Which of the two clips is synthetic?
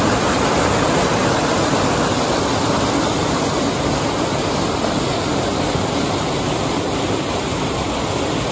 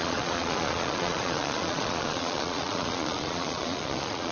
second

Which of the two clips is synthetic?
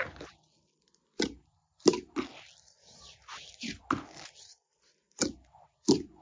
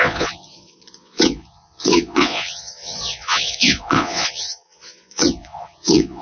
second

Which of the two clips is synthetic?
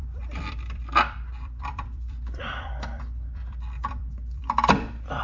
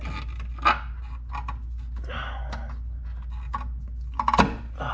first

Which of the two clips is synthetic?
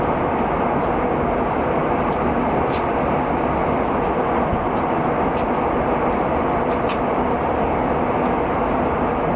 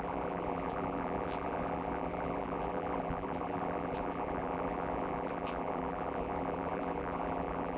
second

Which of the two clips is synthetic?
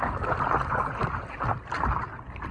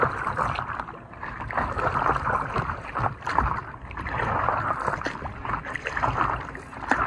second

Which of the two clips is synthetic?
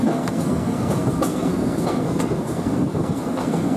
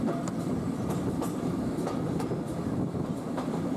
first